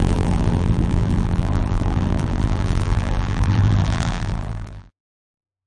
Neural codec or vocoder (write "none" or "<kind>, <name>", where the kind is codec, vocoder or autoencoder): vocoder, BigVGAN v2